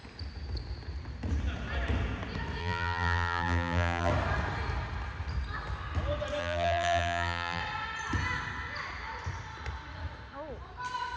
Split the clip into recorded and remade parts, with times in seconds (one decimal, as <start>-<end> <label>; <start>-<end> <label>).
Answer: 0.0-2.6 recorded; 2.6-4.1 remade; 4.1-6.4 recorded; 6.4-7.6 remade; 7.6-11.2 recorded